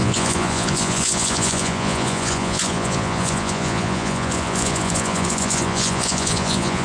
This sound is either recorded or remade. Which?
remade